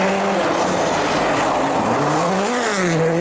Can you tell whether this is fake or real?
real